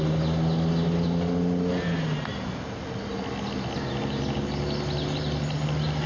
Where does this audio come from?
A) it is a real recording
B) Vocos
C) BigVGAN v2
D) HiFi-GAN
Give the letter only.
A